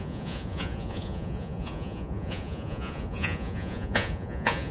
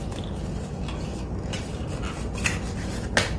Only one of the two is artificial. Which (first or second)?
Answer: first